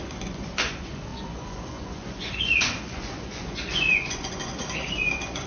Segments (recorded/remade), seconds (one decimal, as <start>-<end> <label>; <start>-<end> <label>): 0.0-5.5 remade